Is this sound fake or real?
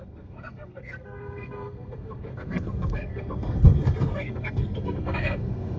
fake